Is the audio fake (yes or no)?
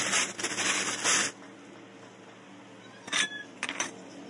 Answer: no